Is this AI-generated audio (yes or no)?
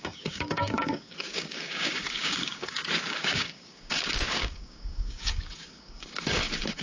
yes